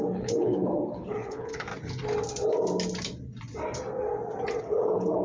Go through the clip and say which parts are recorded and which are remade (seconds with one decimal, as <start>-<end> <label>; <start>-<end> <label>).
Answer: 0.0-1.7 remade; 1.7-4.6 recorded; 4.6-5.2 remade